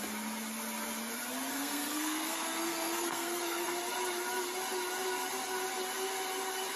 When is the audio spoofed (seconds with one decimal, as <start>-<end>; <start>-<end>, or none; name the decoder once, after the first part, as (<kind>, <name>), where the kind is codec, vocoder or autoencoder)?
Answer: 1.5-3.7 (codec, SNAC)